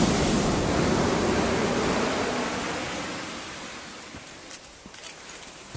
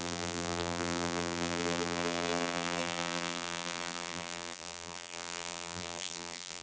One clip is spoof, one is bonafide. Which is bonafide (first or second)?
first